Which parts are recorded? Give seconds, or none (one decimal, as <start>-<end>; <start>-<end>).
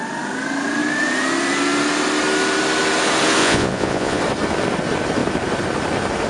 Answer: 0.0-3.4; 4.2-6.3